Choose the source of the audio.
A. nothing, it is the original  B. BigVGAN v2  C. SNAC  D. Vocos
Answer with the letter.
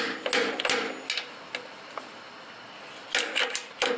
A